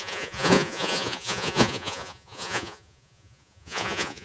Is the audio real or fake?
fake